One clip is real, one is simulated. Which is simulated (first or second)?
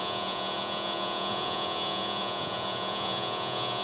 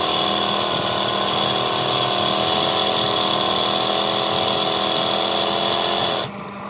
first